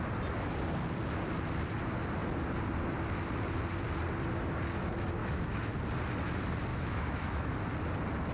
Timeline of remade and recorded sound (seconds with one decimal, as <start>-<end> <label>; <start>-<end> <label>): 0.0-5.2 recorded; 5.2-5.7 remade; 5.7-6.7 recorded; 6.7-7.5 remade; 7.5-8.3 recorded